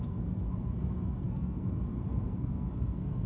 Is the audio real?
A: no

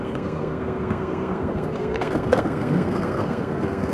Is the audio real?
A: no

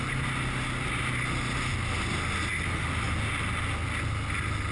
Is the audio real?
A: yes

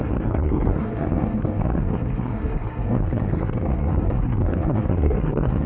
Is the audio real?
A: no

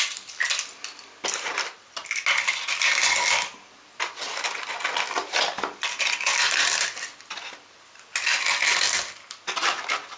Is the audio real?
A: yes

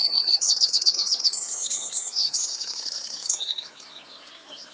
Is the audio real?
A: no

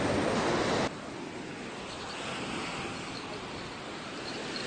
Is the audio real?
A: yes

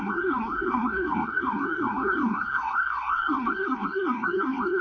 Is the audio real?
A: no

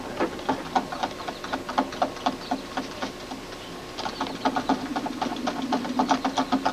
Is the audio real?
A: yes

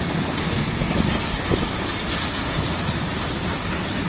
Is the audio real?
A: yes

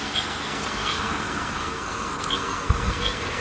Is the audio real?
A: no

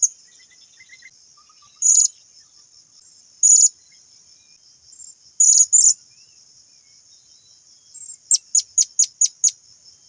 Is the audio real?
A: yes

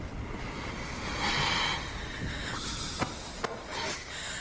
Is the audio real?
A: yes